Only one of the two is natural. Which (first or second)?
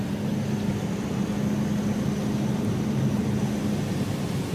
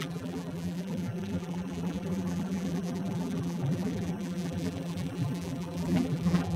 first